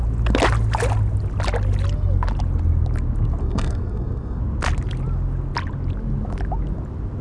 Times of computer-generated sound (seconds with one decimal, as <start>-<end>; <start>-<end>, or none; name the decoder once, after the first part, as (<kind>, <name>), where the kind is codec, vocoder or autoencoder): 3.4-4.4 (codec, SNAC)